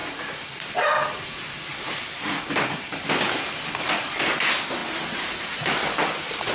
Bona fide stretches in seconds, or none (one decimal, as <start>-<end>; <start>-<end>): 0.7-1.7; 2.3-6.5